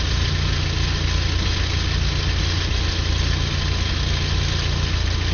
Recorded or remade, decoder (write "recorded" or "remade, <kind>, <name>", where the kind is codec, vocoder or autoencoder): recorded